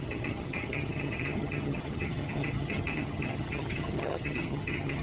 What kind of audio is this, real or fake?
fake